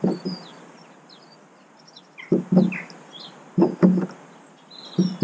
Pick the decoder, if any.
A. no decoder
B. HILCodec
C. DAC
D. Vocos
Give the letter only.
A